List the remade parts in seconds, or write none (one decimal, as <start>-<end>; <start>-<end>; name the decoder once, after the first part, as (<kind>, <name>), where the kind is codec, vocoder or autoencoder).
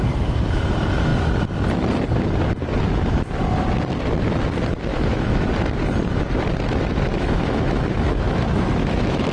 4.9-5.5 (autoencoder, DAC-VAE); 7.1-9.3